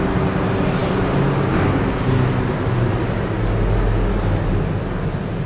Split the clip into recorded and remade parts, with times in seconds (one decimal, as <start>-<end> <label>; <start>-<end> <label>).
0.0-5.5 recorded